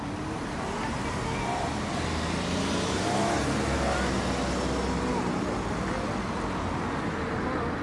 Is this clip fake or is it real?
real